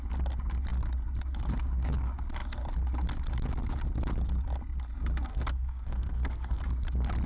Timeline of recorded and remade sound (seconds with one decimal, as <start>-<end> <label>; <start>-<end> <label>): 0.0-5.3 recorded; 5.3-6.6 remade; 6.6-7.3 recorded